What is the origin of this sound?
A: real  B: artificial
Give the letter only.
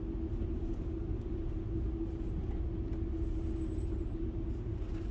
A